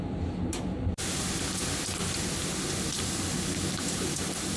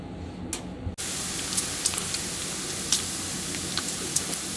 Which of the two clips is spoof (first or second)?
first